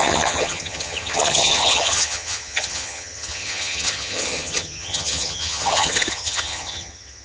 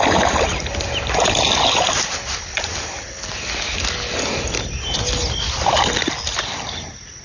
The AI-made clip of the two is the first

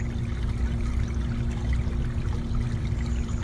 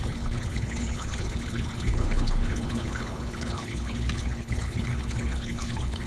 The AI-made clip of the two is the second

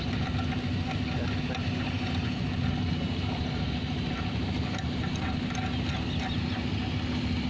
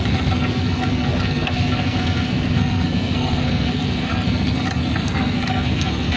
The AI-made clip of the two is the second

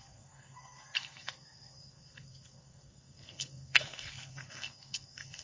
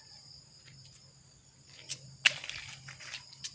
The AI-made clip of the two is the first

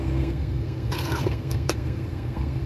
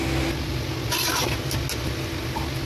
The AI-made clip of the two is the first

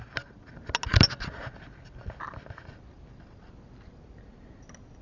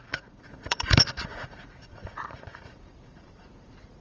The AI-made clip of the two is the second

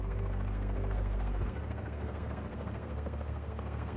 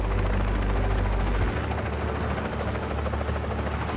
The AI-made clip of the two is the first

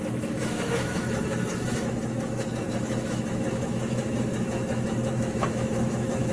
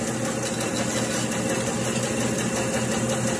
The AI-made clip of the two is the first